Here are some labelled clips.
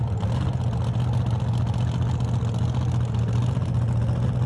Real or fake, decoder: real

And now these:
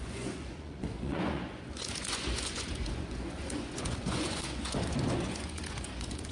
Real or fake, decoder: fake, vocoder, Vocos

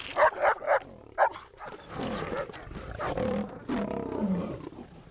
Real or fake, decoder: real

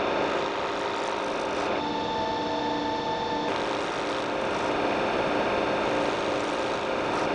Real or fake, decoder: real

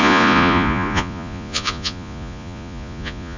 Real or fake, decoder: fake, vocoder, Vocos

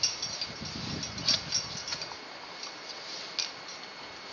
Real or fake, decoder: real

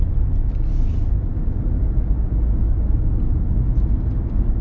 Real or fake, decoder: real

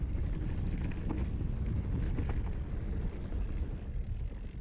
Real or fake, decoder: real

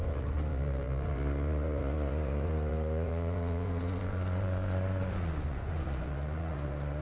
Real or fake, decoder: fake, vocoder, Vocos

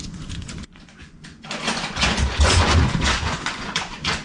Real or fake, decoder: fake, vocoder, Vocos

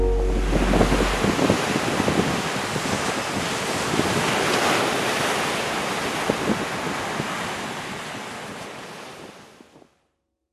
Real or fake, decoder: real